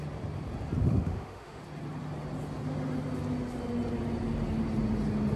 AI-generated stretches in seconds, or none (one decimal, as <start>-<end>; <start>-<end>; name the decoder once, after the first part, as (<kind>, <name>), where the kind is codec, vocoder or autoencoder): 0.8-1.6 (autoencoder, DAC-VAE)

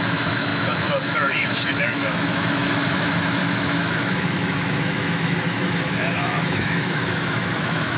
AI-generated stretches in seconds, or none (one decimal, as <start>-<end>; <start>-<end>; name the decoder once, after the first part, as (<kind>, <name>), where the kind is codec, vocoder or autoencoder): 0.0-8.0 (autoencoder, DAC-VAE)

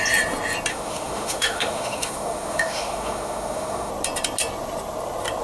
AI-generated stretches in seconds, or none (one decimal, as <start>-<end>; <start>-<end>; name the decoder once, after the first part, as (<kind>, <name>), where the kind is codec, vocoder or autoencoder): 0.7-3.9 (autoencoder, DAC-VAE)

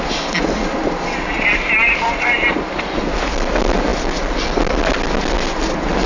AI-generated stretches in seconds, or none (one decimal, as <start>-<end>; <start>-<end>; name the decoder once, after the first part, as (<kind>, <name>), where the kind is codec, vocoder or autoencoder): none

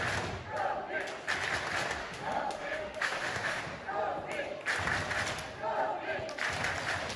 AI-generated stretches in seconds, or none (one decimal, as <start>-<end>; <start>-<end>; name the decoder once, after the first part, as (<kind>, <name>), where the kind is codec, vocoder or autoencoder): 2.0-3.6 (autoencoder, DAC-VAE)

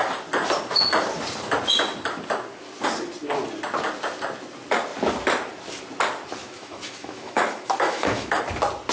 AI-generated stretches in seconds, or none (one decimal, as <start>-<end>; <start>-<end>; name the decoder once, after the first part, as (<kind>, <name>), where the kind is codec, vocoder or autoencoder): 6.4-8.4 (autoencoder, DAC-VAE)